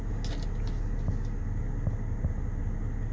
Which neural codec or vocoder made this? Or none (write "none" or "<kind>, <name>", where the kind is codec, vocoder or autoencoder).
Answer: none